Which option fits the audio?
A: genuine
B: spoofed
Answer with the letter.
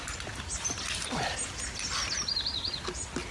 A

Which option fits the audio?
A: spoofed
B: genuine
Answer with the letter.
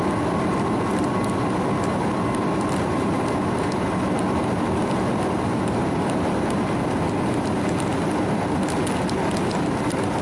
B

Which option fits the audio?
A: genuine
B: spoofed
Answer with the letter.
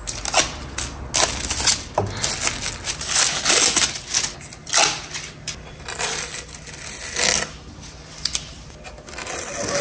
A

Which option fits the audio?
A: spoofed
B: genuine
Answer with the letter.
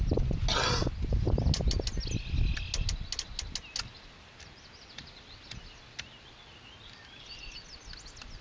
B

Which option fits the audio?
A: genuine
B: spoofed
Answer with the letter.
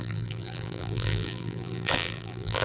B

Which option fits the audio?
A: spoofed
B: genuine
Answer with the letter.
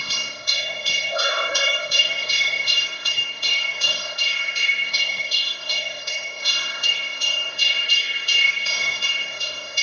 A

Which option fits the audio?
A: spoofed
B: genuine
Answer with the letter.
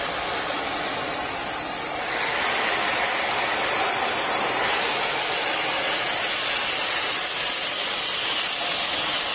B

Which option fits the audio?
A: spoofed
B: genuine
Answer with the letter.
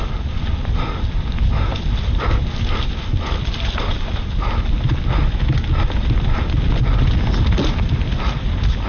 B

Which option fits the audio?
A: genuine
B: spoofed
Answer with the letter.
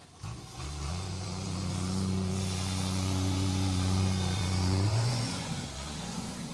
B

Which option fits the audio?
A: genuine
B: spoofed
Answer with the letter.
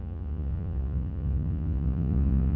B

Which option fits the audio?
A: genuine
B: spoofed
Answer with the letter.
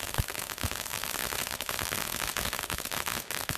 B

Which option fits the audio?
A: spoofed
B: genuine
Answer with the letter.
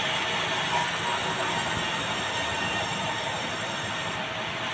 B